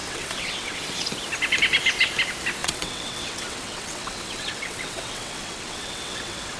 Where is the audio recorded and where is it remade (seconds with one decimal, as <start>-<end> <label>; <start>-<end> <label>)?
0.0-0.8 remade; 0.8-2.6 recorded; 2.6-6.6 remade